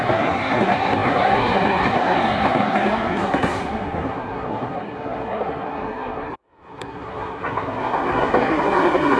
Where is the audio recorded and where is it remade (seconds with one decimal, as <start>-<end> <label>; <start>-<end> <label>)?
0.0-9.2 remade

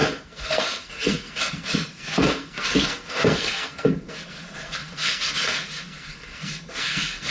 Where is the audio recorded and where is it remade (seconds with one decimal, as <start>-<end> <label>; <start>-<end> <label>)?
0.0-7.3 remade